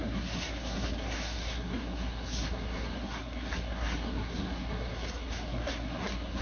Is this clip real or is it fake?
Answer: fake